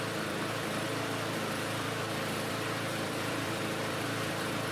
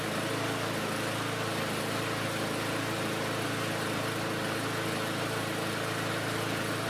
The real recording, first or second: second